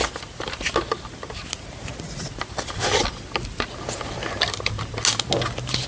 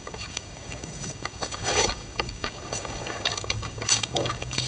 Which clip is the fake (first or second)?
second